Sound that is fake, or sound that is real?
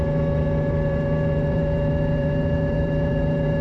fake